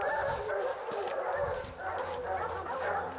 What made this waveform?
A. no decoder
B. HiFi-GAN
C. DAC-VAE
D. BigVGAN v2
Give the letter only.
A